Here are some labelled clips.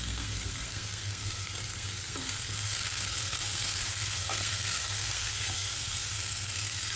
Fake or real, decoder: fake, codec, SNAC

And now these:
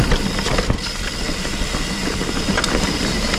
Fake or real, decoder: real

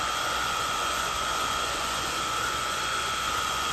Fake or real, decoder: fake, vocoder, Vocos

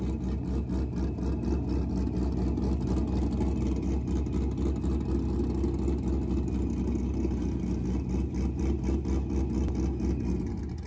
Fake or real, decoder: real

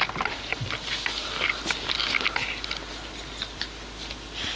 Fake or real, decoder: real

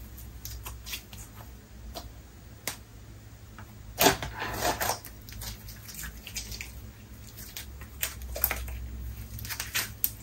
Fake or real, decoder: real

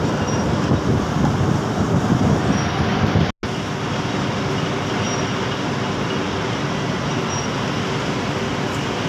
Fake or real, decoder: real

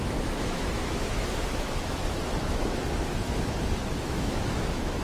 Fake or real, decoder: fake, autoencoder, DAC-VAE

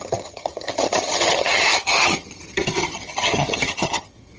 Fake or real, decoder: fake, vocoder, HiFi-GAN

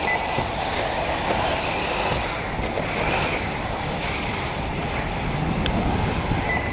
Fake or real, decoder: real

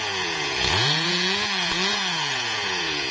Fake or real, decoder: fake, vocoder, Vocos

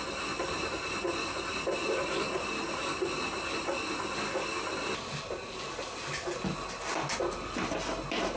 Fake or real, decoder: real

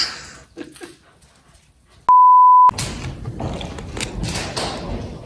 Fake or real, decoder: real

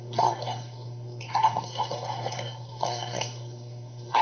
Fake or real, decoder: fake, codec, SNAC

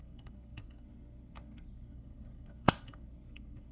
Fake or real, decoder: fake, codec, SNAC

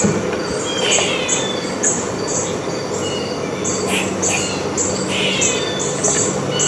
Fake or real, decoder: real